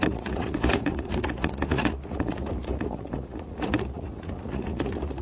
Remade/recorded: remade